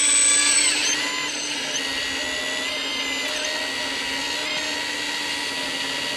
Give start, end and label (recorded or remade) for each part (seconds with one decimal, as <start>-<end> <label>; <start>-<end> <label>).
0.0-0.4 recorded; 0.4-1.1 remade; 1.1-6.2 recorded